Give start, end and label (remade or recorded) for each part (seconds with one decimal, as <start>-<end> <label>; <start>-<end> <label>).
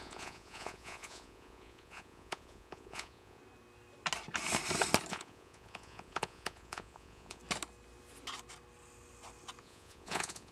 0.0-3.4 remade; 3.4-5.1 recorded; 5.1-7.4 remade; 7.4-9.6 recorded; 9.6-10.5 remade